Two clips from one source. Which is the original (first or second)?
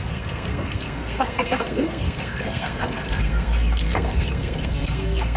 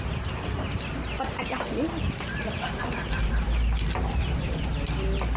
second